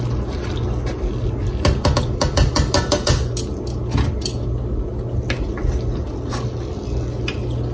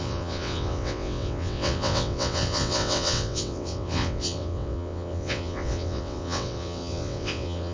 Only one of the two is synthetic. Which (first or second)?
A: second